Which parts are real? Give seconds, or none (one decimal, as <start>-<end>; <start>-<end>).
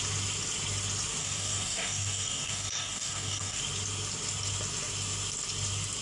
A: 0.0-1.2; 3.6-6.0